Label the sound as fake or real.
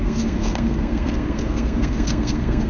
fake